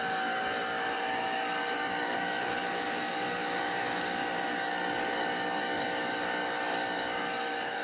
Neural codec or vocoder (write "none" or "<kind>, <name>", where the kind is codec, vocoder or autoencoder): codec, DAC